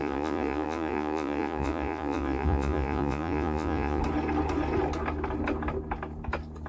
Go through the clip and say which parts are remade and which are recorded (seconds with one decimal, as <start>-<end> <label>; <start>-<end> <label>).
0.0-4.0 remade; 4.0-6.7 recorded